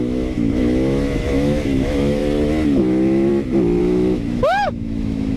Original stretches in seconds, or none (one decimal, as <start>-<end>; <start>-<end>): 2.2-2.8; 3.3-3.8